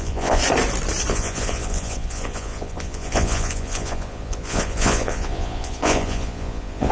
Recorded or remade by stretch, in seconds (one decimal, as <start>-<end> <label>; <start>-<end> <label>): 0.0-0.4 remade; 0.4-1.1 recorded; 1.1-6.9 remade